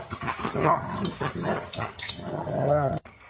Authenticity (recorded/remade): remade